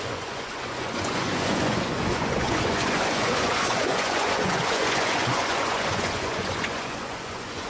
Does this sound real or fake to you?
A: fake